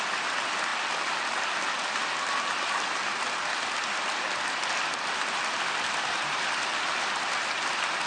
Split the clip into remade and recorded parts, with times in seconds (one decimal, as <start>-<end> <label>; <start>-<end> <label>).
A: 0.0-8.1 recorded